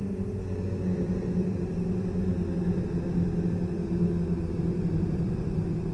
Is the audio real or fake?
real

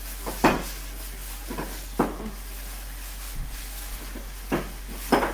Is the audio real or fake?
real